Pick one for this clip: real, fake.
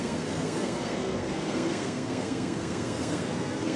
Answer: fake